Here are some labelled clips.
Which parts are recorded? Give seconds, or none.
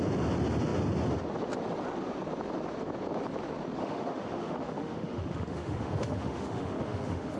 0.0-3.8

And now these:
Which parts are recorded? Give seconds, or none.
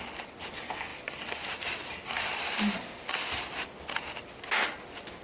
0.0-0.9; 3.4-5.2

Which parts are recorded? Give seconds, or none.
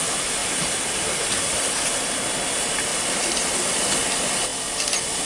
0.0-2.9; 3.9-5.2